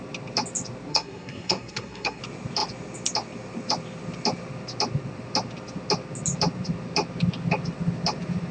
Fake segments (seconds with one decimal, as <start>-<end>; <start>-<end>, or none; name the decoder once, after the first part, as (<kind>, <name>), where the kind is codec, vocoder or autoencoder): 0.9-2.2 (codec, SNAC)

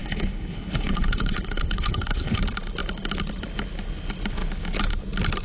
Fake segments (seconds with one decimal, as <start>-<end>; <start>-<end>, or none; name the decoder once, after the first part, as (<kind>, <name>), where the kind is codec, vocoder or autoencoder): 0.0-2.4 (codec, HILCodec)

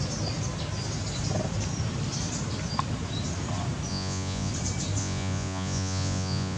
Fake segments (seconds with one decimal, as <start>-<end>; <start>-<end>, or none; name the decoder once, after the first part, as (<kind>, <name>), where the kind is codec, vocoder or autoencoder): 3.9-4.5 (vocoder, Vocos); 5.0-6.6

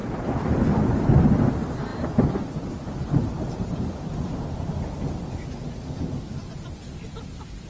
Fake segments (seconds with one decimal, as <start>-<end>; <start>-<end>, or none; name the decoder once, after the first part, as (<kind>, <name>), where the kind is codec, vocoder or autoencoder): none

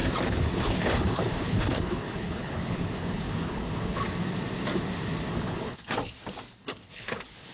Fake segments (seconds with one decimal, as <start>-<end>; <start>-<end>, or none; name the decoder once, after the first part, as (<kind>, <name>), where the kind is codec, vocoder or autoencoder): 0.6-4.0 (codec, HILCodec); 5.3-5.8; 6.7-7.5

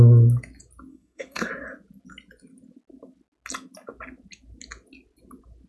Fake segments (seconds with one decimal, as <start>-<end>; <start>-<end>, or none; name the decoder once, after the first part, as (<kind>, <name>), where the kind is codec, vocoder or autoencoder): 0.9-1.5 (codec, SNAC)

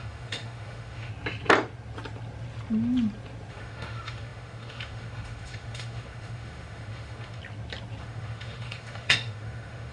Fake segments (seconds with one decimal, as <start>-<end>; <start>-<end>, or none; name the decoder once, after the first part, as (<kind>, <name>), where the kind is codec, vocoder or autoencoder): 0.0-1.1 (autoencoder, DAC-VAE); 3.5-7.4; 8.0-9.9